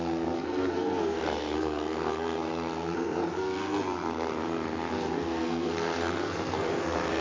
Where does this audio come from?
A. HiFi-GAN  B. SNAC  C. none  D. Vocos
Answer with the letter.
B